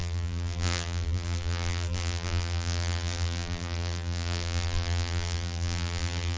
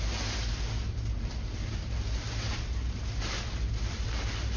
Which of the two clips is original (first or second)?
second